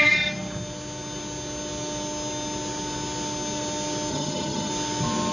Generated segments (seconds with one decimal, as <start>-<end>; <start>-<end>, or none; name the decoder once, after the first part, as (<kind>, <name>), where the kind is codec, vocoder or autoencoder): 4.1-4.7 (vocoder, HiFi-GAN)